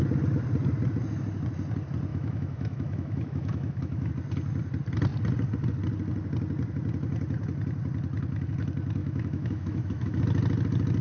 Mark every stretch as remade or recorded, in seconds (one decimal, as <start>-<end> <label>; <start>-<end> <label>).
0.0-2.1 recorded; 2.1-4.1 remade; 4.1-9.0 recorded; 9.0-10.2 remade; 10.2-11.0 recorded